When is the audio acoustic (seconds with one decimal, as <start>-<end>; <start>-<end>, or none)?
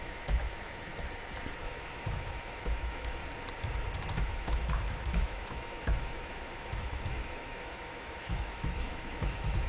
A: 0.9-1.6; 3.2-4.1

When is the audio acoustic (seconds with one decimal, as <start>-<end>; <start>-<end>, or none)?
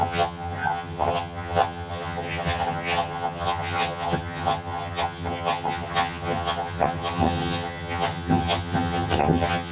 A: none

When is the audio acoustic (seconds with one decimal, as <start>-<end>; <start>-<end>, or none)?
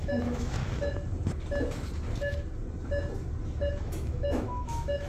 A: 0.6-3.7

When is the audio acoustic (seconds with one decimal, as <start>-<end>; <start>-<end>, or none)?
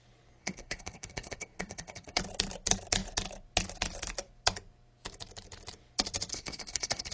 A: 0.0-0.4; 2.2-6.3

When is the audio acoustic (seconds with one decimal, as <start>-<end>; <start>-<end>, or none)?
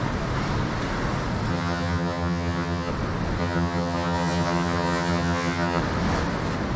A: 0.0-1.5; 2.9-3.4; 5.8-6.8